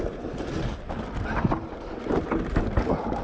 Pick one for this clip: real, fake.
real